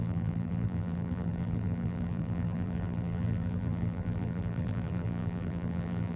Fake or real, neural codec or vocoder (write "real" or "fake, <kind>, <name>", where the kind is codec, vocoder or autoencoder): fake, vocoder, BigVGAN v2